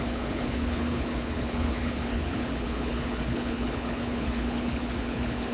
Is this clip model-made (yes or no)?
yes